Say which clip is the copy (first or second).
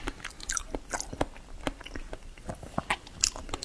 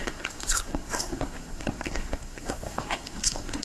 second